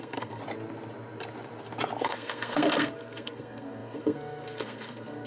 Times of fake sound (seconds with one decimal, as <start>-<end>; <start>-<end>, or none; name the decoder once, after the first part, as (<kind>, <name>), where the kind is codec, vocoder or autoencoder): 0.0-0.4 (codec, SNAC); 2.0-5.3